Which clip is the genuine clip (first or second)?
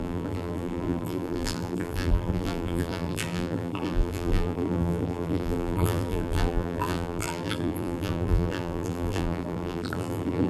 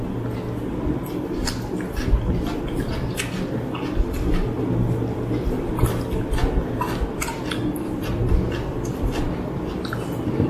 second